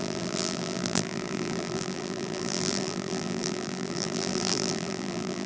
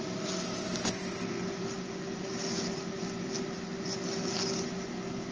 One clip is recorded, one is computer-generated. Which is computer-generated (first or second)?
first